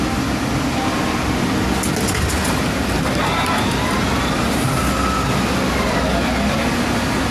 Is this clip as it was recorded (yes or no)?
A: yes